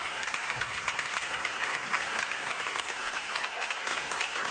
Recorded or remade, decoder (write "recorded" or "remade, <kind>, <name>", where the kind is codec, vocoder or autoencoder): remade, codec, SNAC